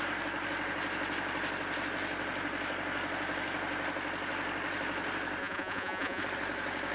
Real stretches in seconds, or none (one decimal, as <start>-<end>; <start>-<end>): 0.0-5.4; 6.2-6.9

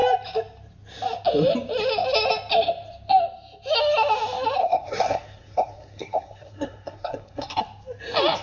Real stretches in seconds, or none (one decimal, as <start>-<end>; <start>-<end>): 0.0-4.6; 7.6-8.4

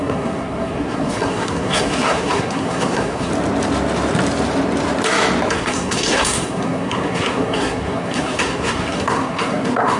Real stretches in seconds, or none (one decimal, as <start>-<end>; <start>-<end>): 3.3-5.5

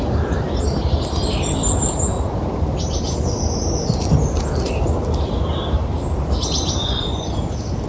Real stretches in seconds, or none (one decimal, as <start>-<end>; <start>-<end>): 0.0-6.8; 7.3-7.9